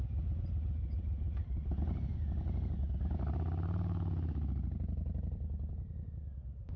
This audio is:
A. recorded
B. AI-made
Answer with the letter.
B